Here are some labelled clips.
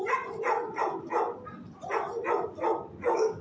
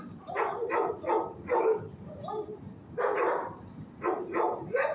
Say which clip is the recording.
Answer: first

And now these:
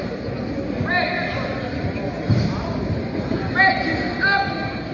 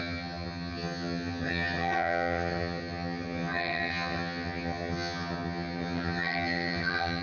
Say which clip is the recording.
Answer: first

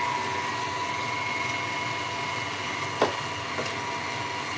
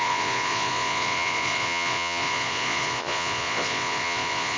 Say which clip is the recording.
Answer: first